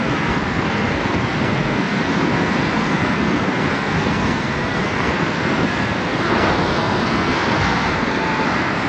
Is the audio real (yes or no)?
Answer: no